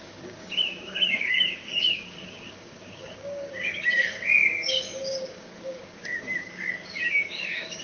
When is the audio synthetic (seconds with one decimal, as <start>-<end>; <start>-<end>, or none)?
0.0-7.8